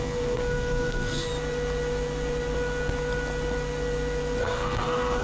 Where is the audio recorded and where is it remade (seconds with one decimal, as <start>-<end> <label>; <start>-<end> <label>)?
0.0-1.3 remade; 1.3-4.4 recorded; 4.4-5.2 remade